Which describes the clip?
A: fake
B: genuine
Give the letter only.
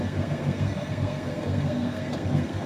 A